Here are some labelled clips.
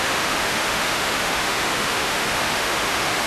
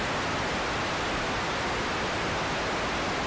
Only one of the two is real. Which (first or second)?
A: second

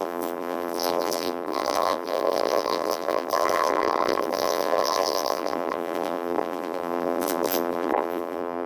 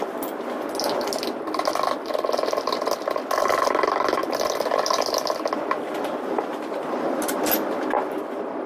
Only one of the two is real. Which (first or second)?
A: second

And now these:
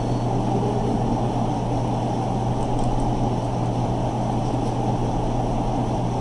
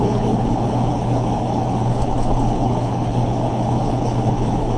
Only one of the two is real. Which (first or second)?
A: first